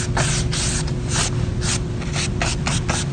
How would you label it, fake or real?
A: real